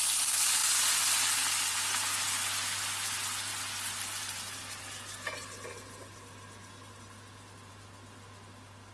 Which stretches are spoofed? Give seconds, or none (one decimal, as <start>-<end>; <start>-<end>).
none